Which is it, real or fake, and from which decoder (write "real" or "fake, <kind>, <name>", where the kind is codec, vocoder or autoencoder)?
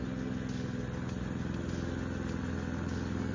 real